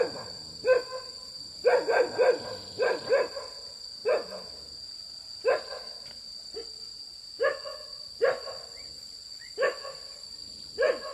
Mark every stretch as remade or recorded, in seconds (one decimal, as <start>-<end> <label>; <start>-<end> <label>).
0.0-11.1 recorded